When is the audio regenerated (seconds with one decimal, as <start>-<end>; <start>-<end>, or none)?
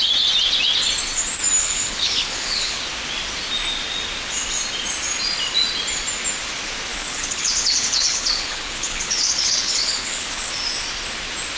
1.6-2.8; 6.9-10.5